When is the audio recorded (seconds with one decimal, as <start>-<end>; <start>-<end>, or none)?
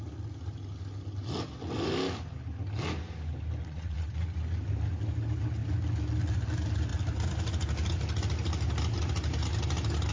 0.0-3.6; 4.1-10.1